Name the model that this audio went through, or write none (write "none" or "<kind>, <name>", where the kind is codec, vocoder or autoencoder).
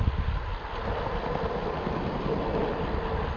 none